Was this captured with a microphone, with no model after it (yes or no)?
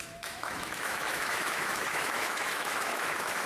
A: no